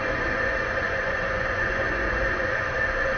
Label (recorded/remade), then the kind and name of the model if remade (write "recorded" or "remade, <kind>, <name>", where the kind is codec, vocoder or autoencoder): remade, vocoder, Vocos